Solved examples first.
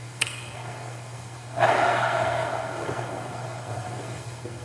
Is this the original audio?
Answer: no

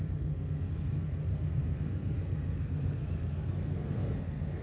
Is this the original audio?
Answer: no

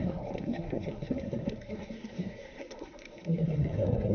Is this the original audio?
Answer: no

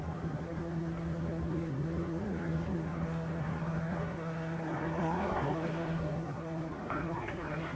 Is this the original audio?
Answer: no